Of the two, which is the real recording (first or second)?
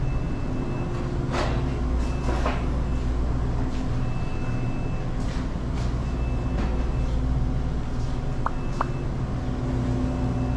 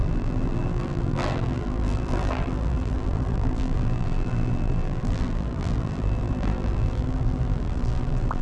first